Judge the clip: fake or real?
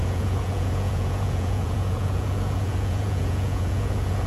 fake